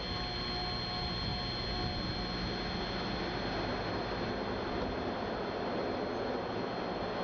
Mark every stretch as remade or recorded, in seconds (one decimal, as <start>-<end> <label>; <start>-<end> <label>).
0.0-7.2 recorded